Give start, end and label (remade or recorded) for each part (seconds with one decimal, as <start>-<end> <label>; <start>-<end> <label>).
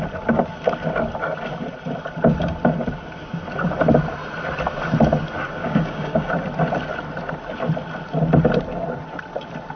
0.0-5.6 recorded; 5.6-6.3 remade; 6.3-9.8 recorded